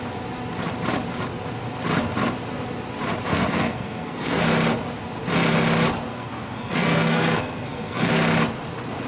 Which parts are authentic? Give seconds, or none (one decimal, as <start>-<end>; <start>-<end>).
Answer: 0.0-3.3; 4.4-6.1; 8.1-9.1